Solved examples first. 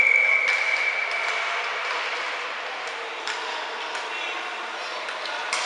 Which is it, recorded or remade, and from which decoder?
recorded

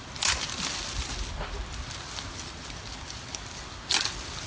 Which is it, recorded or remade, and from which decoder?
recorded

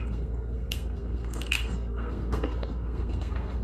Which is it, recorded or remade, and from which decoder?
remade, codec, SNAC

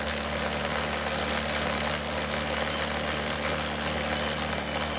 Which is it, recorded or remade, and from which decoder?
recorded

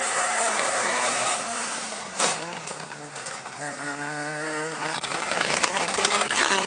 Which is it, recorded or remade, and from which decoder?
remade, codec, SNAC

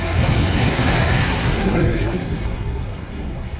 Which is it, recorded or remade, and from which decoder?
remade, codec, SNAC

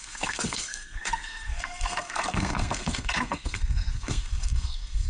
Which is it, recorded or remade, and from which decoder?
remade, codec, SNAC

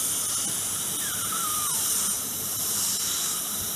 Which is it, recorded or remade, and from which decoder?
recorded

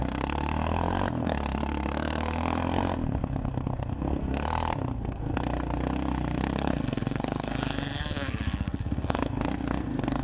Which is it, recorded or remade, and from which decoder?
remade, codec, SNAC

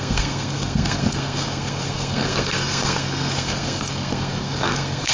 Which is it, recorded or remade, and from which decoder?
remade, codec, SNAC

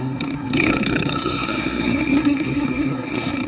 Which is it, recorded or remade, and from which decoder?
remade, codec, SNAC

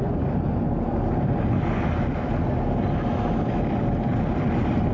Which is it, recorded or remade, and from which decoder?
recorded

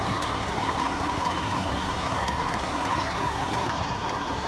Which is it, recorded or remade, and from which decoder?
remade, codec, SNAC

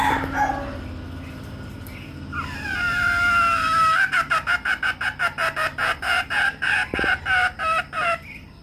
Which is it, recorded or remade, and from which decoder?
recorded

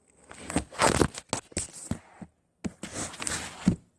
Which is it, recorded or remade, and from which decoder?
recorded